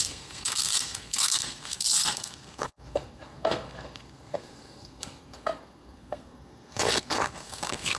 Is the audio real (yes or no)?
no